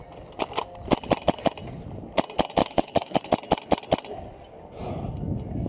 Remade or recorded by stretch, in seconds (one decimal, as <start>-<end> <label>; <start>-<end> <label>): 0.0-2.6 recorded; 2.6-3.2 remade; 3.2-5.7 recorded

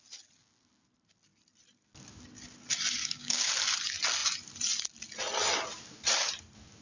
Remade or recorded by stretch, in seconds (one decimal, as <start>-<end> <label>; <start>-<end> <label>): 0.0-3.0 recorded; 3.0-3.5 remade; 3.5-6.8 recorded